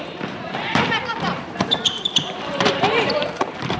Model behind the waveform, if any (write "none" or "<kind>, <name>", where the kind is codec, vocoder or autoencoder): vocoder, BigVGAN v2